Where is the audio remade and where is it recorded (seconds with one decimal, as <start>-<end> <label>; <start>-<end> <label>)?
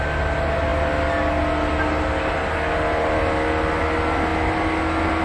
0.0-5.2 recorded